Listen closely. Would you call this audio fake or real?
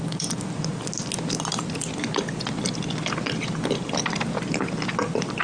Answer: real